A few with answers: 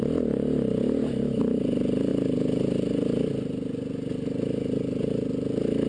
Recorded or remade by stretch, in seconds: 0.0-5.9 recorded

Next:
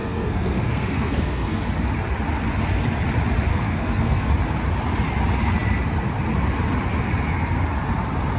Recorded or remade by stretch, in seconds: 0.0-1.6 remade; 1.6-3.5 recorded; 3.5-4.3 remade; 4.3-8.4 recorded

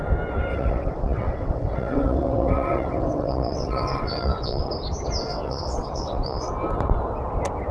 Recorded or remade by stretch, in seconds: 0.0-0.5 recorded; 0.5-4.7 remade; 4.7-5.3 recorded; 5.3-6.5 remade; 6.5-7.7 recorded

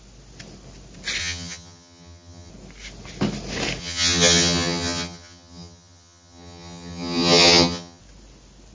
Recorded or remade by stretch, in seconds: 0.0-1.2 recorded; 1.2-2.5 remade; 2.5-3.8 recorded; 3.8-8.0 remade; 8.0-8.7 recorded

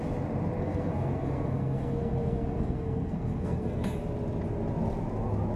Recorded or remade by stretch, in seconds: 0.0-0.6 recorded; 0.6-4.0 remade; 4.0-5.6 recorded

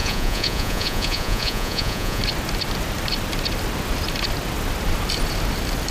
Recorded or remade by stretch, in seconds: 0.0-2.2 remade; 2.2-5.9 recorded